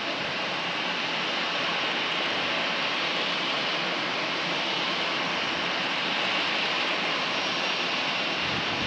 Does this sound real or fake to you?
real